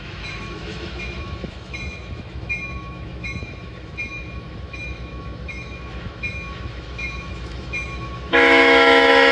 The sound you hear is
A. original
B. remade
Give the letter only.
B